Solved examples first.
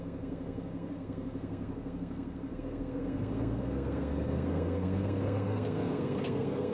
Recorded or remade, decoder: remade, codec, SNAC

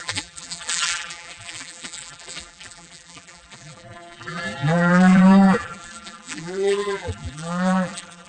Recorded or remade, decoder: remade, vocoder, BigVGAN v2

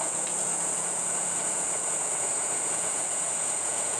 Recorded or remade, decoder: remade, vocoder, Vocos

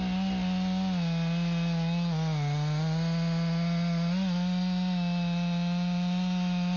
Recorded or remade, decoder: recorded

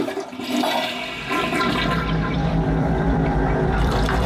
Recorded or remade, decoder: remade, vocoder, BigVGAN v2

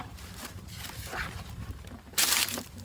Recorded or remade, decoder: remade, vocoder, BigVGAN v2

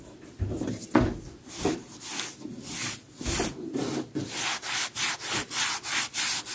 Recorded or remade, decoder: recorded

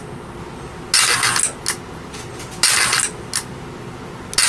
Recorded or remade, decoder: recorded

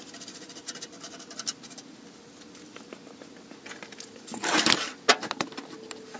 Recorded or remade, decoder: recorded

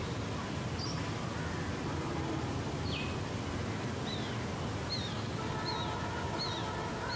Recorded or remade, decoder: recorded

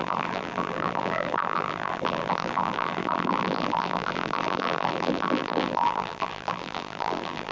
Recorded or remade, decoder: remade, vocoder, BigVGAN v2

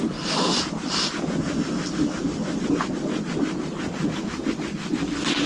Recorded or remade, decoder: recorded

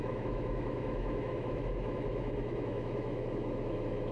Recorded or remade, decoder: remade, autoencoder, DAC-VAE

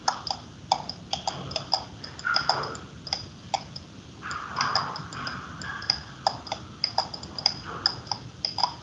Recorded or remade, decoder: recorded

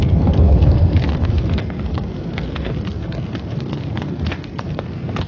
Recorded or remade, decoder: remade, codec, SNAC